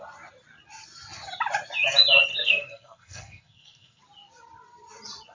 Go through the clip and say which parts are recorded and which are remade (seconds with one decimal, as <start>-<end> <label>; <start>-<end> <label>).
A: 0.0-2.3 recorded; 2.3-4.0 remade; 4.0-5.3 recorded